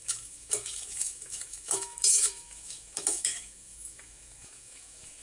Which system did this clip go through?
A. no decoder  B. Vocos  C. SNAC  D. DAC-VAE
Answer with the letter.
D